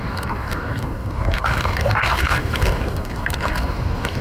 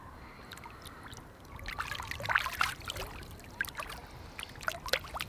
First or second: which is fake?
first